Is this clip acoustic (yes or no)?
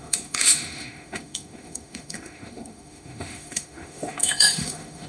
no